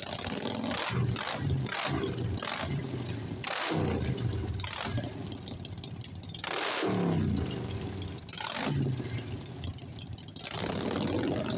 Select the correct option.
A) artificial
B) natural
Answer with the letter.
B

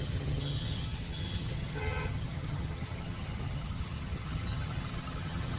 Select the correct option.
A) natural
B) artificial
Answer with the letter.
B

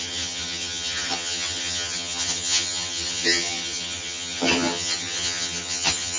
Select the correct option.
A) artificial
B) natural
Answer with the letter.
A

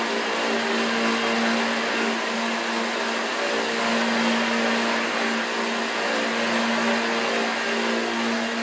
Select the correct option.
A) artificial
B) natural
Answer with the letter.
B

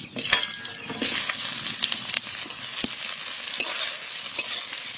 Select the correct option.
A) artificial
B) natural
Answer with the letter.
B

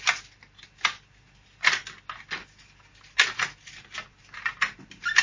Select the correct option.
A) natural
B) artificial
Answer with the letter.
A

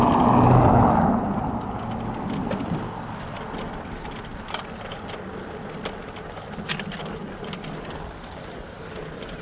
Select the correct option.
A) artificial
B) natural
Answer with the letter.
B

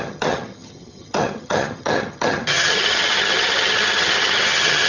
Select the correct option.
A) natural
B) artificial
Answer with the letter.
B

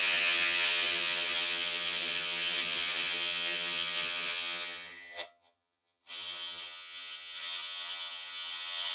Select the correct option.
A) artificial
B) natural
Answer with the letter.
A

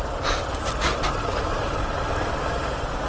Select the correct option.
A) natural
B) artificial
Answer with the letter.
A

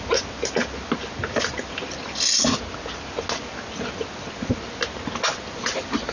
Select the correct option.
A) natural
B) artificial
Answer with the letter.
A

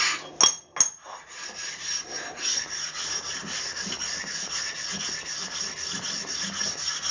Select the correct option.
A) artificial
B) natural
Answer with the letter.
B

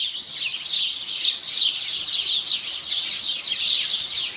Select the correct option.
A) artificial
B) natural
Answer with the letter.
B